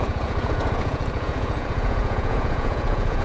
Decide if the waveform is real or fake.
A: fake